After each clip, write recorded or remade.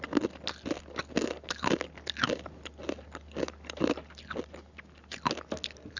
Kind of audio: recorded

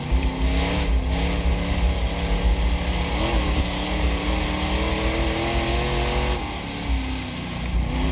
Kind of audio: recorded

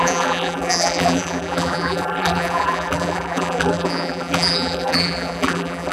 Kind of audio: remade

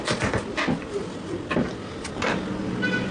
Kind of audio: recorded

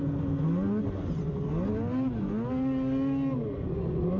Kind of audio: recorded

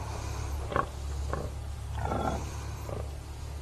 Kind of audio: recorded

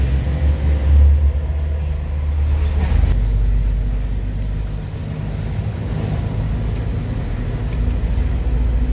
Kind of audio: recorded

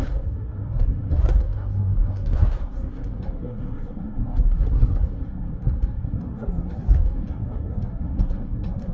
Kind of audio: remade